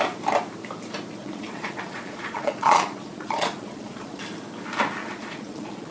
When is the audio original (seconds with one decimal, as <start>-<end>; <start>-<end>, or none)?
0.0-1.2; 4.2-5.0